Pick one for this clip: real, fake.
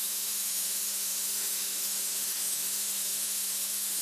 fake